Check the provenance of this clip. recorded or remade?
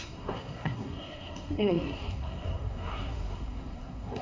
remade